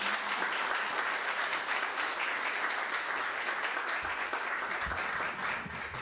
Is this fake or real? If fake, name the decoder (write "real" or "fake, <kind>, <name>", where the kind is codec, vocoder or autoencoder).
real